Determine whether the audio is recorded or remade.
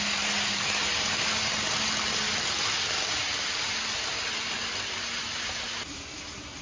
recorded